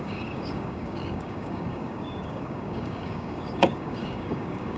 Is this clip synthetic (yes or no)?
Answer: yes